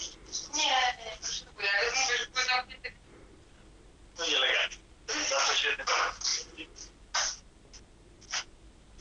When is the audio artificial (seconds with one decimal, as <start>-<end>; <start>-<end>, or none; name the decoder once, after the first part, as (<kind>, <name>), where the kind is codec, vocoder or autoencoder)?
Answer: none